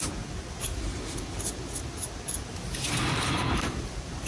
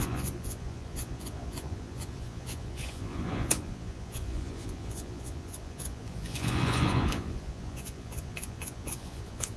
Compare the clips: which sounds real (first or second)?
first